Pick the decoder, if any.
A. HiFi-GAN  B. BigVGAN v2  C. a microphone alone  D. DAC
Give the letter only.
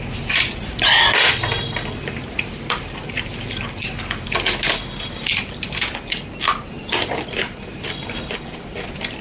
C